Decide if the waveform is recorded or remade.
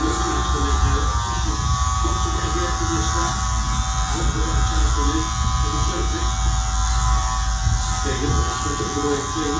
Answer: recorded